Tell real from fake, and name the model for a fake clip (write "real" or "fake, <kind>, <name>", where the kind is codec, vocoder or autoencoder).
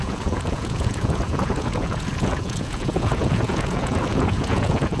fake, vocoder, Vocos